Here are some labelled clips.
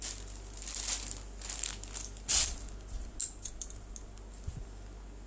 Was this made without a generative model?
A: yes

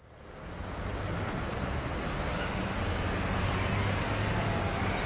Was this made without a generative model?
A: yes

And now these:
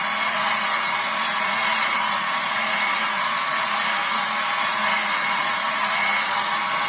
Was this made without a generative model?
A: no